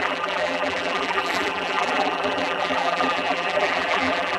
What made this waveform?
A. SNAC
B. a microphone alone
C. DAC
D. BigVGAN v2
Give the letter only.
D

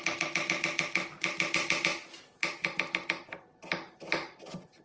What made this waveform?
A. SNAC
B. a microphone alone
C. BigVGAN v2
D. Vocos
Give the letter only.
B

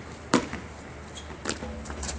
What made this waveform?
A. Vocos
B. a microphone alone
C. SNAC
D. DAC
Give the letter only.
B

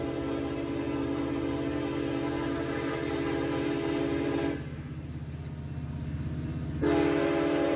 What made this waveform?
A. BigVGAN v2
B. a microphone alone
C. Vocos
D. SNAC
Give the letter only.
B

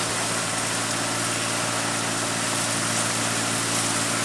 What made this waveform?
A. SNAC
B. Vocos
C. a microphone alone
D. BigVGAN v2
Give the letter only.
C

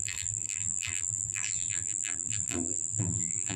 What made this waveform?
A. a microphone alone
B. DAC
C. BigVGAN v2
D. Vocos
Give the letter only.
C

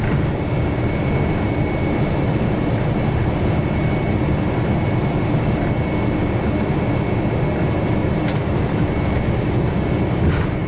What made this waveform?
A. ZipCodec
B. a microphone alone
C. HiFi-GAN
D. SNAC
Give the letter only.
B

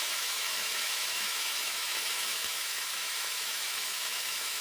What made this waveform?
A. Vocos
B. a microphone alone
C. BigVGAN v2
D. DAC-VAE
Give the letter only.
D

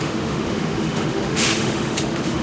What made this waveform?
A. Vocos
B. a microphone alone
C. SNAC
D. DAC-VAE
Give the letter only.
D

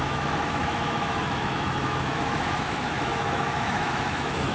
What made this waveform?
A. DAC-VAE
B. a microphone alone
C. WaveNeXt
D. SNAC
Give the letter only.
A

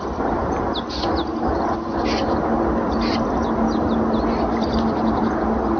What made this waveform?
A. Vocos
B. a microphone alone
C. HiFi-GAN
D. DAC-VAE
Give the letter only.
B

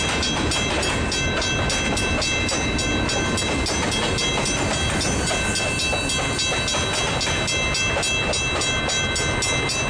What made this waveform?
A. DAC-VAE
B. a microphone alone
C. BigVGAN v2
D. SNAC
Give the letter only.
B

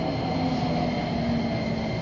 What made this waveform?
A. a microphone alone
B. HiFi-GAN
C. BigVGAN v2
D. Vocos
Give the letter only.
A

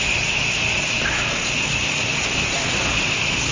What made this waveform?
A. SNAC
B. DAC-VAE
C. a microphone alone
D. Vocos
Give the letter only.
C